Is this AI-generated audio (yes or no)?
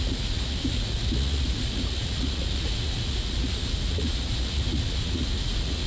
yes